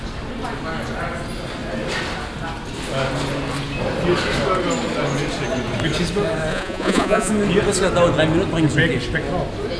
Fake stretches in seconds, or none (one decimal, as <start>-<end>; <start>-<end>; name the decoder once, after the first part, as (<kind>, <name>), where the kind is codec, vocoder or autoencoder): 6.5-7.3 (vocoder, Vocos)